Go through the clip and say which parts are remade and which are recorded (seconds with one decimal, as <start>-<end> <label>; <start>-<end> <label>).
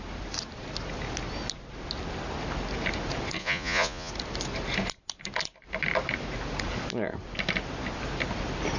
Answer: 0.0-3.4 recorded; 3.4-4.1 remade; 4.1-8.8 recorded